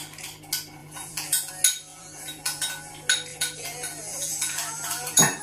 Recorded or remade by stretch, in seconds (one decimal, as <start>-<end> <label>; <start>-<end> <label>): 0.0-0.8 recorded; 0.8-1.5 remade; 1.5-1.9 recorded; 1.9-2.9 remade; 2.9-3.3 recorded; 3.3-5.4 remade